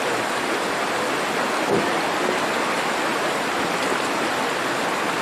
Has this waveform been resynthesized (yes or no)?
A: no